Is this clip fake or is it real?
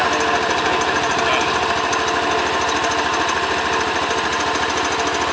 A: real